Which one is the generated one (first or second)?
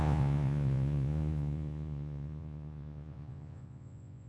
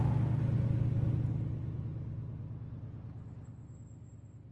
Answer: first